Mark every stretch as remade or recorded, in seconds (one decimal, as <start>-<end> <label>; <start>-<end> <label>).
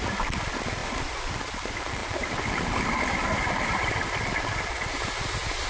0.0-5.7 remade